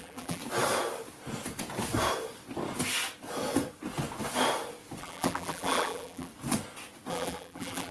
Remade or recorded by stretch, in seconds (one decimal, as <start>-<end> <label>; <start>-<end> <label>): 0.0-0.4 remade; 0.4-5.0 recorded; 5.0-6.3 remade; 6.3-7.1 recorded; 7.1-7.9 remade